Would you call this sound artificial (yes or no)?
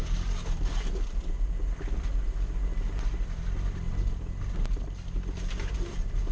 no